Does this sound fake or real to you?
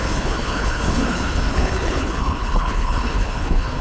fake